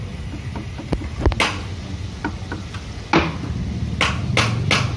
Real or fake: real